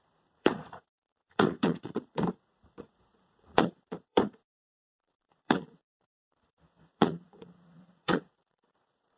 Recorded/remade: remade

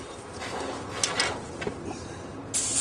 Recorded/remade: recorded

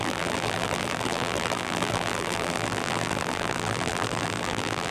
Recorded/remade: remade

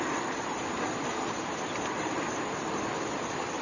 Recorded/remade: remade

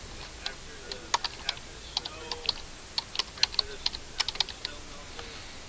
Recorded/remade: recorded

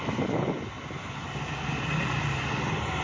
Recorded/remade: recorded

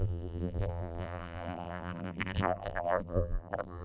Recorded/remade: remade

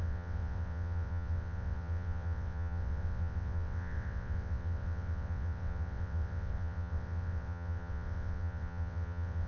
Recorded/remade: remade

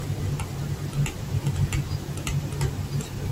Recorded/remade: recorded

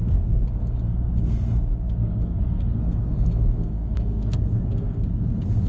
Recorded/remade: remade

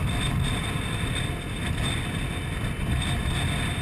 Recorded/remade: recorded